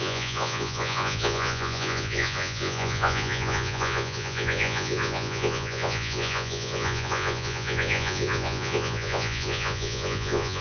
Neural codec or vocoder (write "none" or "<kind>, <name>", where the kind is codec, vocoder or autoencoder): vocoder, Vocos